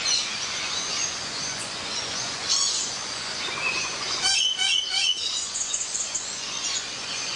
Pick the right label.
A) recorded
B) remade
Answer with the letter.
B